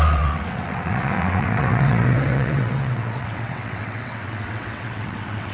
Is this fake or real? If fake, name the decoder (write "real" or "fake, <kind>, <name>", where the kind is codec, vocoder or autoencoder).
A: fake, vocoder, WaveNeXt